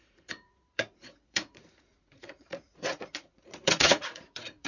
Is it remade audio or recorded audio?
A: remade